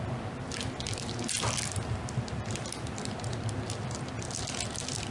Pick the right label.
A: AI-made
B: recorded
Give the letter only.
B